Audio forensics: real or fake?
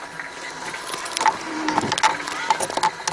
real